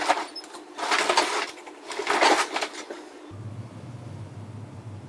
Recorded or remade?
recorded